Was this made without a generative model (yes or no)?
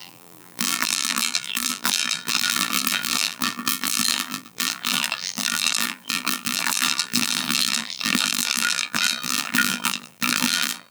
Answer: no